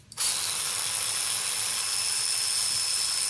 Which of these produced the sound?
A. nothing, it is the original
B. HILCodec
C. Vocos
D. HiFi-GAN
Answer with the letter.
A